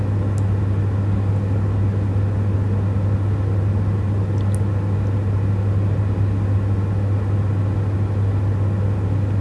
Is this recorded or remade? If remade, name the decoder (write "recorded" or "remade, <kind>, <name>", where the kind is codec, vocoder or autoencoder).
recorded